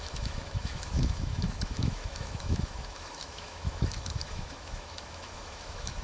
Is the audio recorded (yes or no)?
no